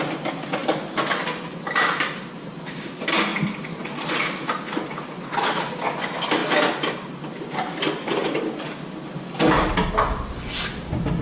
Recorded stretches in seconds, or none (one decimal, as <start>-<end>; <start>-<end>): 0.0-11.2